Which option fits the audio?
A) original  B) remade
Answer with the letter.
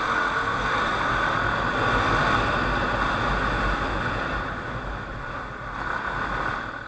A